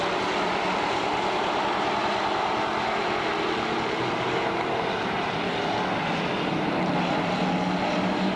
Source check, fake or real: real